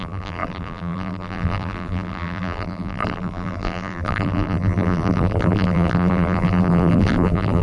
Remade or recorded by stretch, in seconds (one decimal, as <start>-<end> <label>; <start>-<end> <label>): 0.0-7.6 remade